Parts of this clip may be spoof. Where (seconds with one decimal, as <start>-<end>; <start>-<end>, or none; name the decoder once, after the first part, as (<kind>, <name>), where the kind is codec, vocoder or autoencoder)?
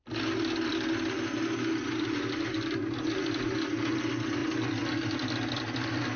none